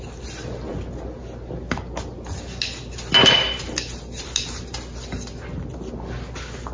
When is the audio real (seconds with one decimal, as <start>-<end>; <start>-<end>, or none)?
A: 0.0-6.7